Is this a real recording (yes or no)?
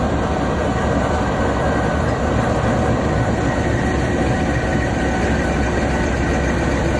yes